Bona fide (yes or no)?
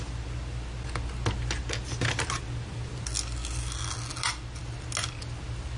yes